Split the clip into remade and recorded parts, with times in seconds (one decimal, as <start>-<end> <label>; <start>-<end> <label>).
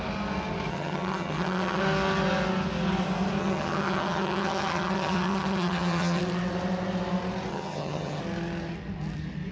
0.0-0.7 recorded; 0.7-1.8 remade; 1.8-3.4 recorded; 3.4-6.2 remade; 6.2-7.5 recorded; 7.5-8.2 remade; 8.2-9.5 recorded